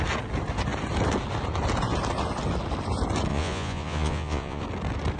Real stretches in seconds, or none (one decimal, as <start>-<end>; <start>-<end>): 0.0-3.3; 4.6-5.2